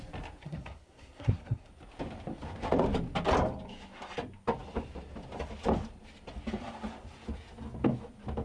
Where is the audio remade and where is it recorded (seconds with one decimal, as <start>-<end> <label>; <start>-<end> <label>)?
0.0-0.4 recorded; 0.4-1.7 remade; 1.7-8.4 recorded